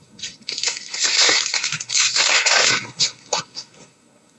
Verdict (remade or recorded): remade